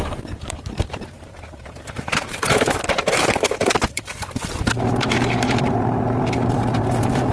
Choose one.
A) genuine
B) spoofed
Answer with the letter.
B